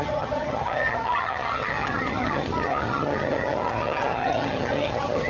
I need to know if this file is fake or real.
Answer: fake